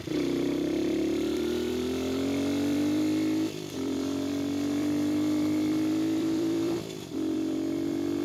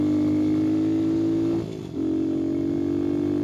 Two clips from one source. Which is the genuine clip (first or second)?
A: second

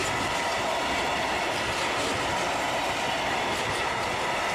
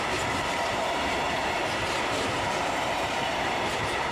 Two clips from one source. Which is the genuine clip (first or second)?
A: first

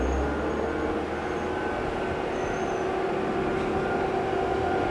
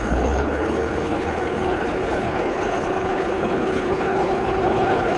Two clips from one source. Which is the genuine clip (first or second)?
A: first